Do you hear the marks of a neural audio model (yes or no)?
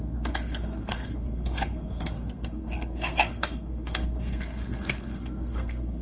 yes